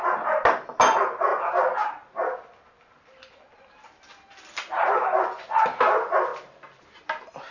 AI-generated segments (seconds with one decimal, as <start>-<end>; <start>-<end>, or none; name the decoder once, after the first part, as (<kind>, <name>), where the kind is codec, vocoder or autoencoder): none